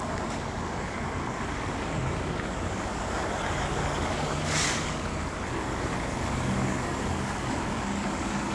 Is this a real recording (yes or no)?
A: no